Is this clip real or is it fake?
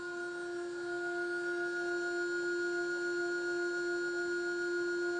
real